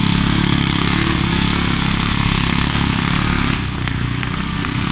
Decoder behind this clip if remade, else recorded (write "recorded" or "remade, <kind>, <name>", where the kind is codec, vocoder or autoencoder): remade, codec, SNAC